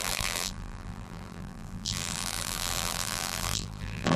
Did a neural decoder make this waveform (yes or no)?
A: yes